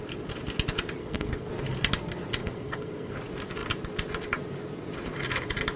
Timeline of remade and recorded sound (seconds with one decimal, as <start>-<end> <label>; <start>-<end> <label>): 0.0-1.0 recorded; 1.0-1.5 remade; 1.5-2.4 recorded; 2.4-3.2 remade; 3.2-5.8 recorded